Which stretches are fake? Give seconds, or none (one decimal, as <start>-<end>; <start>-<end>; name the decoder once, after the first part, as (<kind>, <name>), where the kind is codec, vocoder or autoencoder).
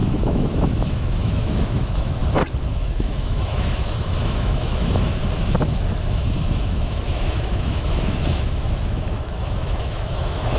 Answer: 0.0-2.2 (autoencoder, DAC-VAE); 2.7-5.2; 6.1-10.6